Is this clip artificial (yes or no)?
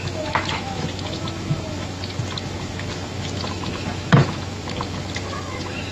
yes